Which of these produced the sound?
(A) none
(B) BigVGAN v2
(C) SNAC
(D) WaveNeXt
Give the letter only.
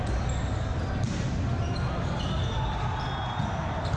A